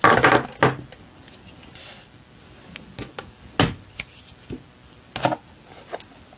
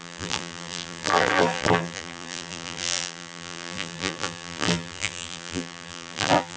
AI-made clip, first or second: second